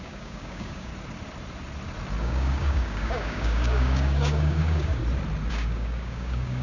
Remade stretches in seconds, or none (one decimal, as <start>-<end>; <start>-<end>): 0.0-0.9; 2.2-5.0; 5.5-6.6